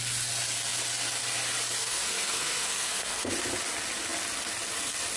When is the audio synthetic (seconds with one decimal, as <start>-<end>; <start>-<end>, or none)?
1.8-3.3